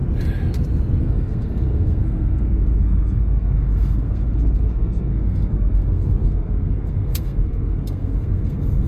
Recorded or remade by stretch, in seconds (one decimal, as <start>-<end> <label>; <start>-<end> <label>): 0.0-1.0 recorded; 1.0-8.9 remade